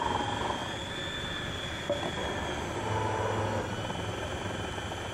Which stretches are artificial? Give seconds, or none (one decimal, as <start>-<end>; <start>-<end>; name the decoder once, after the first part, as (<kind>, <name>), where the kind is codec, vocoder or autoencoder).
none